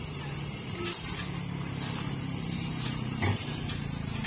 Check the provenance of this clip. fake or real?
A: fake